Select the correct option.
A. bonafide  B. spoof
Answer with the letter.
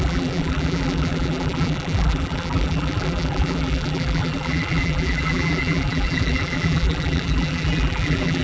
B